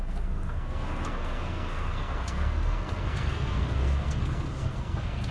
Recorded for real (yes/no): no